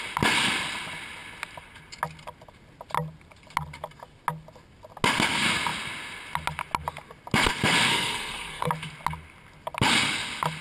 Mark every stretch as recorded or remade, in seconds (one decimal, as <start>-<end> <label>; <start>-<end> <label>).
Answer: 0.0-7.9 recorded; 7.9-8.7 remade; 8.7-10.6 recorded